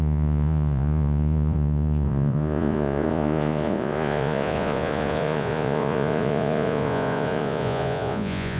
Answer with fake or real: fake